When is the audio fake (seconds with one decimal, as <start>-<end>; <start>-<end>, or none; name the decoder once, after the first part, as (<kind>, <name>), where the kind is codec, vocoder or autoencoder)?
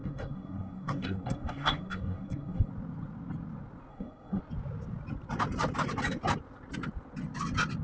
0.0-2.7 (codec, SNAC); 3.9-4.4